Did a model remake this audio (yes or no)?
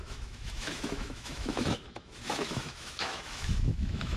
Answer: yes